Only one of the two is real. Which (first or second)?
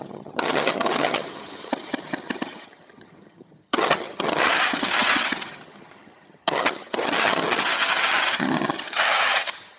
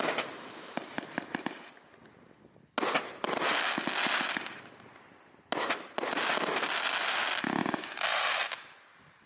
second